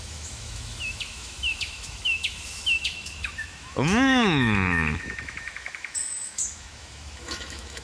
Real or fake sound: fake